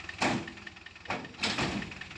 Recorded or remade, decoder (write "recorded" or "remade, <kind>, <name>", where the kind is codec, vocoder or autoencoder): recorded